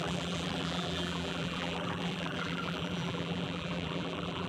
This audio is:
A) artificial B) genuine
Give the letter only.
A